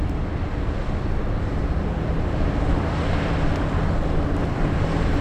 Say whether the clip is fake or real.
real